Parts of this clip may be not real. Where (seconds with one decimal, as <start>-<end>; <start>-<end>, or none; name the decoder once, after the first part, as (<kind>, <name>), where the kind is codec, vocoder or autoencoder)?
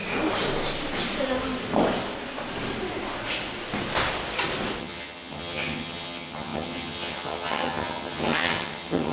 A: 4.8-9.1 (vocoder, HiFi-GAN)